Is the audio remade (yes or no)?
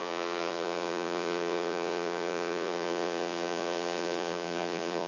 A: yes